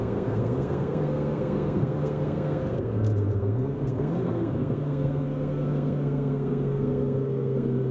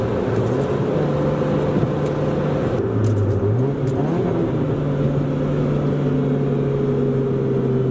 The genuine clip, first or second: second